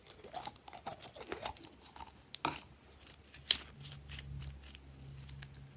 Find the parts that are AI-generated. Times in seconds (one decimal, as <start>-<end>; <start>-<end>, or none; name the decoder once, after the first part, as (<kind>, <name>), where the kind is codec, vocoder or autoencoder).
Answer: none